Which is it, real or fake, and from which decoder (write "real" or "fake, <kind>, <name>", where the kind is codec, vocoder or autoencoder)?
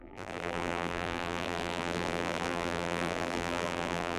fake, vocoder, BigVGAN v2